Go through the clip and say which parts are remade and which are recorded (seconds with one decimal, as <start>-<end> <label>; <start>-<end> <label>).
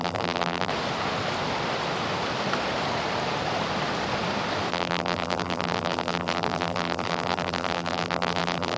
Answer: 0.0-0.7 remade; 0.7-4.7 recorded; 4.7-8.8 remade